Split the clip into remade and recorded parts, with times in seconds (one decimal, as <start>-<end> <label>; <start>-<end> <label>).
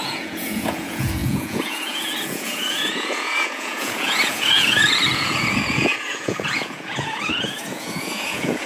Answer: 0.0-8.7 remade